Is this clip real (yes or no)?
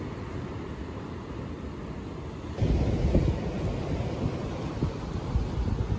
yes